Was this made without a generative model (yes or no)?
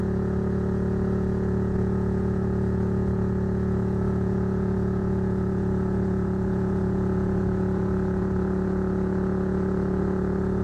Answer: no